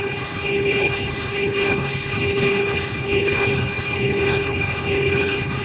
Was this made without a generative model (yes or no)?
no